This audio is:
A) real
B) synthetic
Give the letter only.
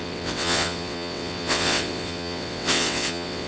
B